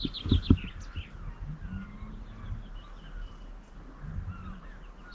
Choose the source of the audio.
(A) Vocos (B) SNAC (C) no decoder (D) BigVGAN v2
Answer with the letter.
C